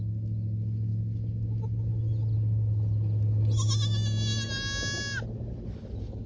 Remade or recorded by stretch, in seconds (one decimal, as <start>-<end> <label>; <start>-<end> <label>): 0.0-6.3 recorded